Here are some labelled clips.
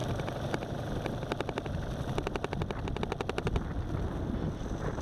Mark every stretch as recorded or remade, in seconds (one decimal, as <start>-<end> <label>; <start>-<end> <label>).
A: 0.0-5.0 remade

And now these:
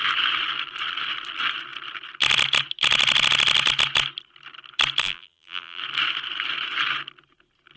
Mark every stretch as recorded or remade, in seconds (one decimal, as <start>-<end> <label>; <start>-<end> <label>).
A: 0.0-5.0 recorded; 5.0-5.8 remade; 5.8-7.8 recorded

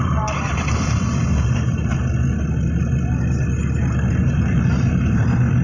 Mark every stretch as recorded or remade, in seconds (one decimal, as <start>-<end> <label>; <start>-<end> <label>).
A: 0.0-1.9 remade; 1.9-4.2 recorded; 4.2-5.6 remade